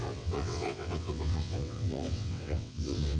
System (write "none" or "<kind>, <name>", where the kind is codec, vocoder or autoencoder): vocoder, WaveNeXt